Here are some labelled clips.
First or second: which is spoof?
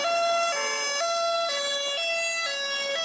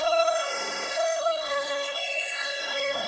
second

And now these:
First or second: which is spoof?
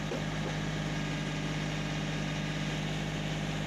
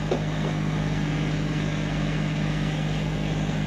second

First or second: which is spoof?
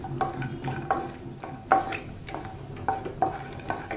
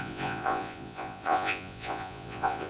second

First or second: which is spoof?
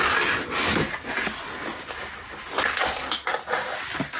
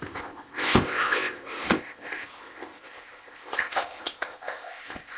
second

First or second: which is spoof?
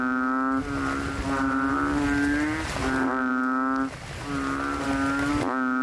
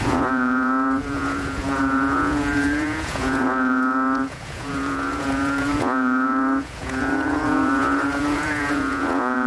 second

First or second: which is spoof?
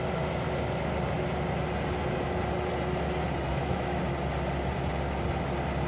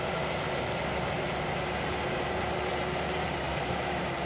second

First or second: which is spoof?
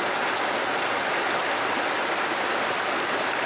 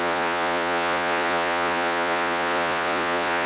second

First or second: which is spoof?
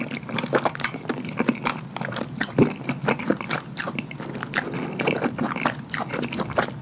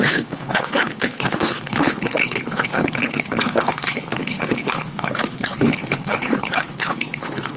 second